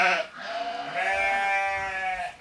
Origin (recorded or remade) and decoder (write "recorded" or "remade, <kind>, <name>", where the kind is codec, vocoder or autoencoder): recorded